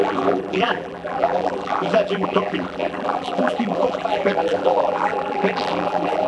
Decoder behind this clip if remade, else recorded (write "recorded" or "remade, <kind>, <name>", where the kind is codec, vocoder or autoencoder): remade, vocoder, BigVGAN v2